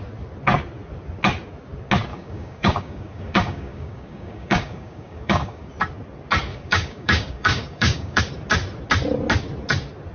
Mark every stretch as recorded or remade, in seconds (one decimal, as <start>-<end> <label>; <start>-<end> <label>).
0.0-2.1 recorded; 2.1-5.7 remade; 5.7-6.5 recorded; 6.5-8.2 remade; 8.2-10.1 recorded